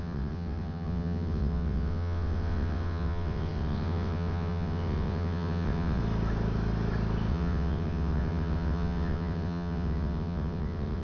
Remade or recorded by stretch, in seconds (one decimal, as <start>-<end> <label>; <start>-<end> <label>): 0.0-6.0 remade; 6.0-7.3 recorded; 7.3-11.0 remade